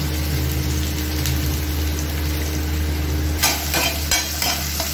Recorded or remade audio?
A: recorded